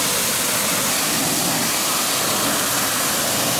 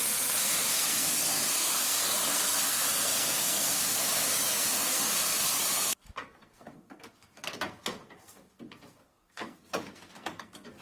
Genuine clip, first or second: first